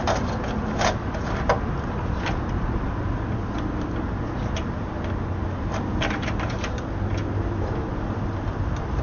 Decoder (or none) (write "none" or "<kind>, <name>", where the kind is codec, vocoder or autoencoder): none